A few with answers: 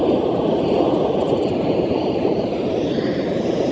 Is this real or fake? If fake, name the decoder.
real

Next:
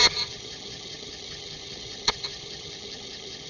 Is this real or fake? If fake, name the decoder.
fake, vocoder, HiFi-GAN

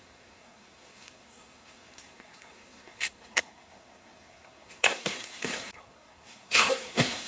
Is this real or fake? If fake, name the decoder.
fake, codec, SNAC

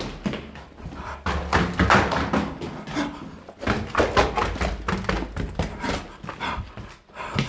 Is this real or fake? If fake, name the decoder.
real